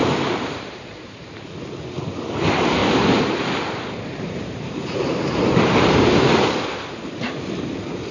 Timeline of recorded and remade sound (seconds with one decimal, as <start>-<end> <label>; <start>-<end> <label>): 0.0-1.5 remade; 1.5-2.8 recorded; 2.8-6.9 remade; 6.9-8.1 recorded